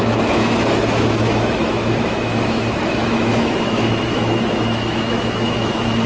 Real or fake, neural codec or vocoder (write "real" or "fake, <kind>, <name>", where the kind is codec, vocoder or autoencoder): fake, autoencoder, DAC-VAE